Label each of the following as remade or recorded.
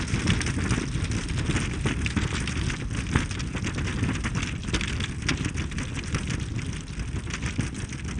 recorded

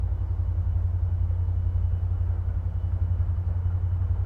recorded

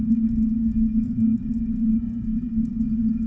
remade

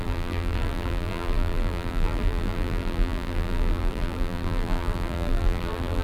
remade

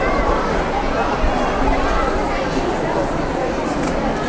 recorded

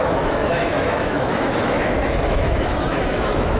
remade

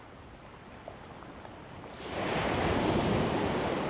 recorded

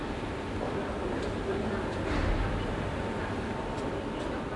recorded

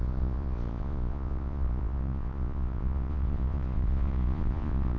remade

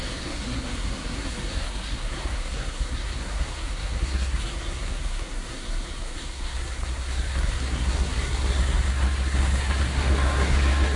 remade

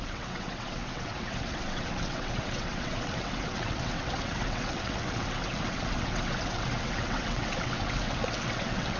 remade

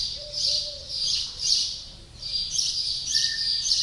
remade